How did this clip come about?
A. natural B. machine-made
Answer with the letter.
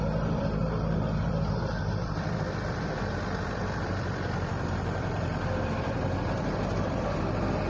B